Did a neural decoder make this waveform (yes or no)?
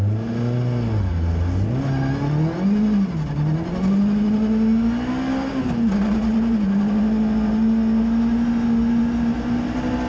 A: no